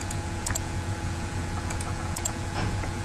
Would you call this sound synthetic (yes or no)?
yes